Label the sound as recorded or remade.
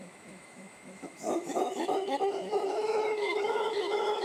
remade